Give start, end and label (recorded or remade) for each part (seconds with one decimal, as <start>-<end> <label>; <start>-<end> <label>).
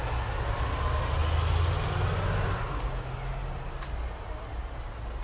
0.0-5.2 recorded